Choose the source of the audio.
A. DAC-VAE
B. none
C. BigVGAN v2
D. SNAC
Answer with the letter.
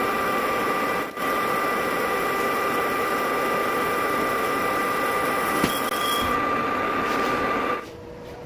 B